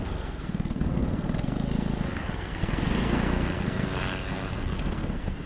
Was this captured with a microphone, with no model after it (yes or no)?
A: no